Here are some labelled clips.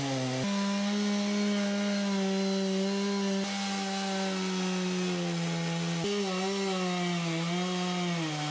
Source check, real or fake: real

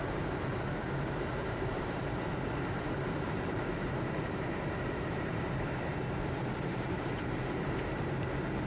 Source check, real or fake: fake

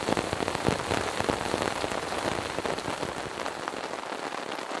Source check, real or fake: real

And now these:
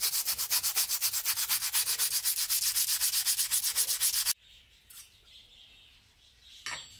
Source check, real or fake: real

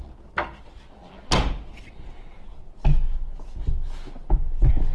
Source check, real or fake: real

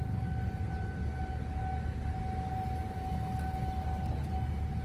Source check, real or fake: real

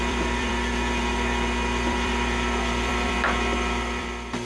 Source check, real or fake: fake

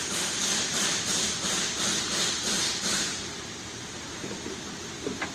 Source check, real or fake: fake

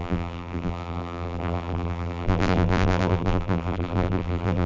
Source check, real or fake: fake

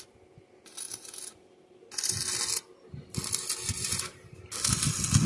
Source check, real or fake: real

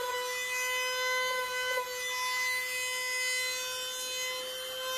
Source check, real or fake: real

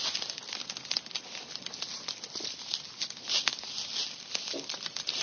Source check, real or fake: real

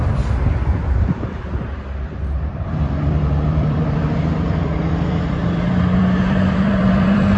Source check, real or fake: fake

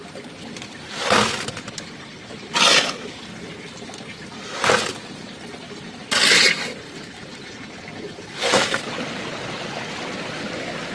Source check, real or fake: real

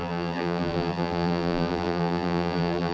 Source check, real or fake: fake